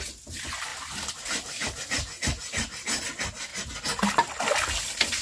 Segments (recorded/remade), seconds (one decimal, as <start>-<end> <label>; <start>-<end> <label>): 0.0-5.2 recorded